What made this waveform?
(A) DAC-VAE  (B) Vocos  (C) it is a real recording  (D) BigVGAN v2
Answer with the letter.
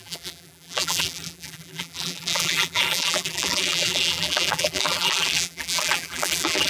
D